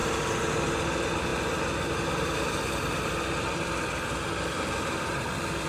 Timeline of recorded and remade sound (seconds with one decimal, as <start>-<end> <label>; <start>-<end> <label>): 0.0-0.5 remade; 0.5-5.7 recorded